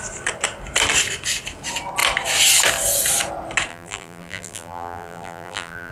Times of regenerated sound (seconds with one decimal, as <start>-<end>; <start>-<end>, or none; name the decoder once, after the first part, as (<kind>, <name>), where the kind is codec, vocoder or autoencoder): 3.7-5.9 (vocoder, BigVGAN v2)